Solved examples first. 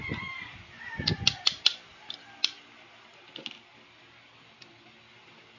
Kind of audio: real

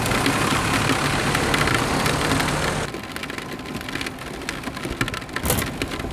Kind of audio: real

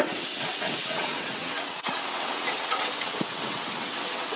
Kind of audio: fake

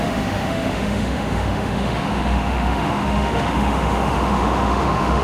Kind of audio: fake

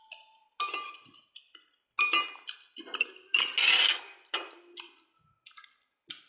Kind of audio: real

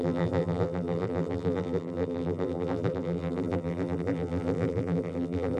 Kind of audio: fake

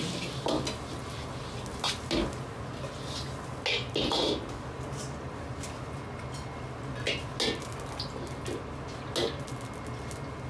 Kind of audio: real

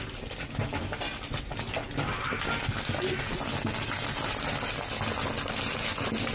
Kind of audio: real